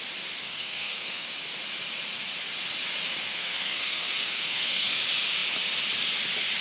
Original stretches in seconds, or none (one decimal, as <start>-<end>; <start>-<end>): 0.0-0.4; 1.3-3.3; 5.0-6.6